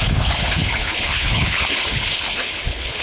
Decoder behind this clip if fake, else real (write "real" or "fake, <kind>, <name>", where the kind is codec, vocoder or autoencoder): fake, codec, HILCodec